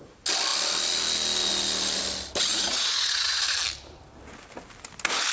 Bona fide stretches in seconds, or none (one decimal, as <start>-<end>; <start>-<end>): 0.0-2.5; 3.4-5.3